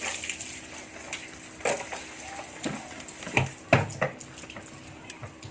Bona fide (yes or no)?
yes